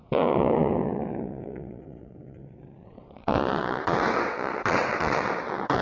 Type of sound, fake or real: fake